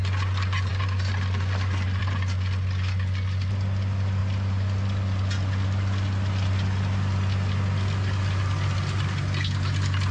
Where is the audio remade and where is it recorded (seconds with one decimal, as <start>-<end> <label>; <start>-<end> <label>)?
0.0-10.1 recorded